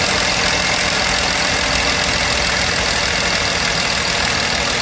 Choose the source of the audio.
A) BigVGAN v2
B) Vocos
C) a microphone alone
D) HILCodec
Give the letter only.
C